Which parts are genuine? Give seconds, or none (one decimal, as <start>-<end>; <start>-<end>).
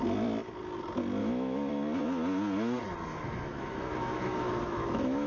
0.0-1.2; 1.7-3.1